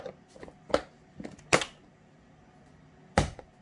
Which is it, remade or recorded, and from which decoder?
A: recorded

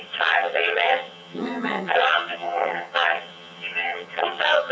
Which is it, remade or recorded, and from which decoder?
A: remade, vocoder, HiFi-GAN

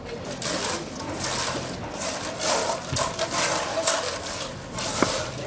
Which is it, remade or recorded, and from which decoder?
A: recorded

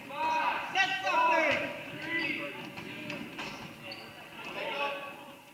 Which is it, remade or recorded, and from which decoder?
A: remade, vocoder, BigVGAN v2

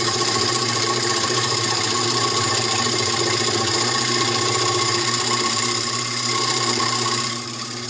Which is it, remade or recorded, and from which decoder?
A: remade, vocoder, BigVGAN v2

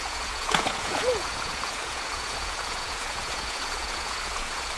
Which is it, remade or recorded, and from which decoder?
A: remade, vocoder, Vocos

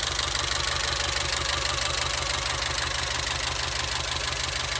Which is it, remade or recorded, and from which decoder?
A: recorded